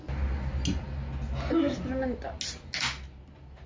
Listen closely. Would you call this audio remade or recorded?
recorded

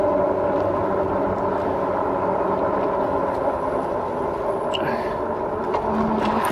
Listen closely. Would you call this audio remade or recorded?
recorded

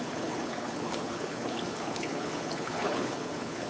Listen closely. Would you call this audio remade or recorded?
remade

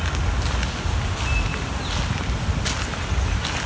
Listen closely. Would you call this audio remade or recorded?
recorded